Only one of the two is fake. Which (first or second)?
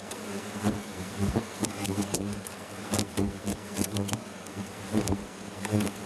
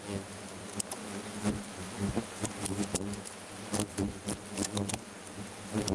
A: first